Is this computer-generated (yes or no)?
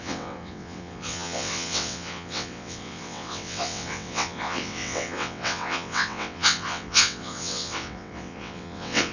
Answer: yes